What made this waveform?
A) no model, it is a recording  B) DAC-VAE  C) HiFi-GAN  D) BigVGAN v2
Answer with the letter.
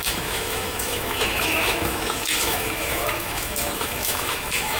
B